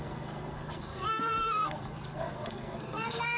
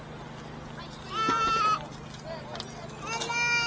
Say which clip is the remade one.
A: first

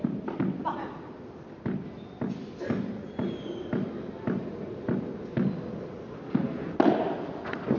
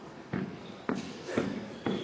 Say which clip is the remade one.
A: second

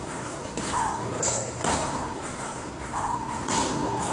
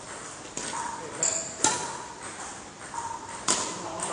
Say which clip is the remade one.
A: first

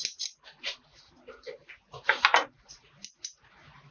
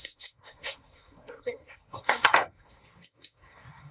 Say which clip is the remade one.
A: second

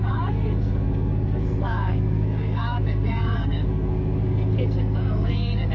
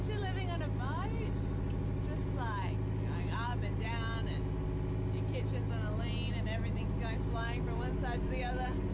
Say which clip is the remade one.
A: first